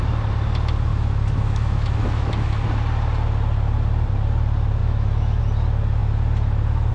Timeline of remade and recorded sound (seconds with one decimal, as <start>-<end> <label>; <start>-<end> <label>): 0.0-0.9 recorded; 0.9-2.5 remade; 2.5-4.8 recorded; 4.8-5.4 remade; 5.4-6.9 recorded